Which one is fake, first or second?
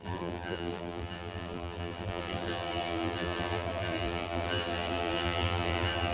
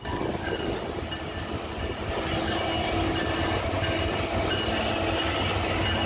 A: first